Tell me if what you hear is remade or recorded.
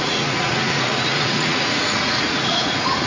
remade